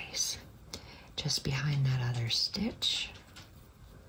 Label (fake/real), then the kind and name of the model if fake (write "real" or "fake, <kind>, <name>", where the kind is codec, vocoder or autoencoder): real